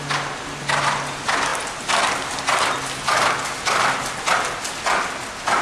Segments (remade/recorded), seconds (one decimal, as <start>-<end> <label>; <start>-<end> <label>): 0.0-5.6 recorded

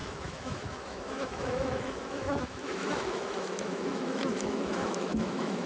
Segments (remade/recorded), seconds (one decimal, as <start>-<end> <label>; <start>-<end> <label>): 0.0-5.7 remade